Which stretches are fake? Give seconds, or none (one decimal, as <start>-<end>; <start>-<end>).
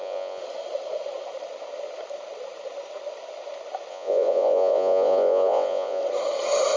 0.0-0.4; 3.9-6.0